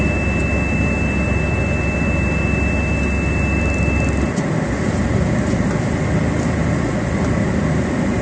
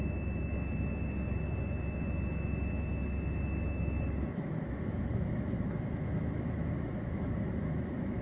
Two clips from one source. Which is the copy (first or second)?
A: second